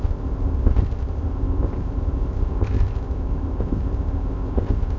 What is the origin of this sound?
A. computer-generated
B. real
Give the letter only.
A